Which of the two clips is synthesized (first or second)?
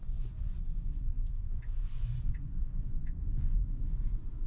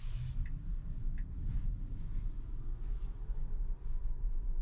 first